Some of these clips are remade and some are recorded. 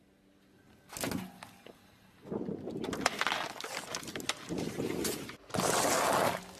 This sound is recorded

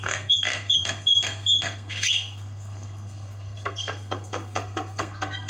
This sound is remade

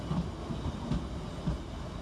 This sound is recorded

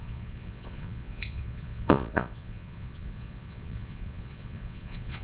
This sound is remade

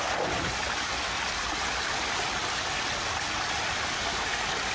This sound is recorded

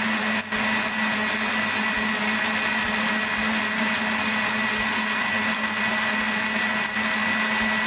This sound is recorded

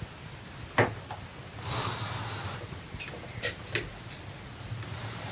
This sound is recorded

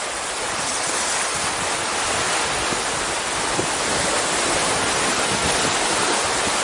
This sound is recorded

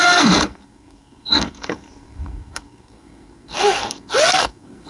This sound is remade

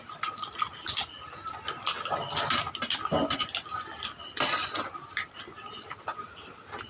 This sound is recorded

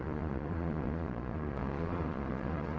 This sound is remade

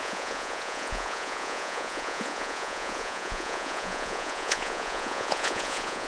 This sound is remade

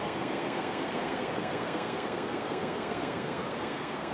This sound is remade